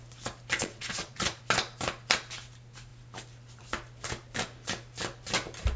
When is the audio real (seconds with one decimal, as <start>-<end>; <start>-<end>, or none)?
0.0-0.6; 1.4-5.8